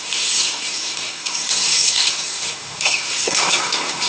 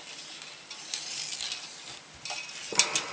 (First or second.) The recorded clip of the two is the second